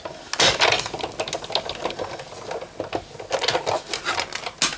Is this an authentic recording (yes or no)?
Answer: yes